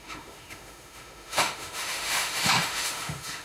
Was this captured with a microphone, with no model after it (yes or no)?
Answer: no